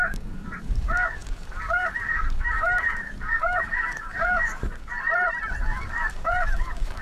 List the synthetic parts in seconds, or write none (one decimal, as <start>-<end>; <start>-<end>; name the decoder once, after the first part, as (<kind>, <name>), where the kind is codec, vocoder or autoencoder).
0.0-4.9 (codec, DAC); 5.6-7.0